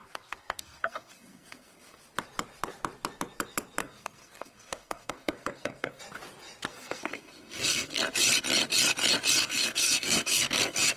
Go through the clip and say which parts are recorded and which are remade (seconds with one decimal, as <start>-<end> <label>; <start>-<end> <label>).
0.0-2.0 remade; 2.0-3.8 recorded; 3.8-6.0 remade; 6.0-6.7 recorded; 6.7-8.0 remade; 8.0-9.4 recorded; 9.4-11.0 remade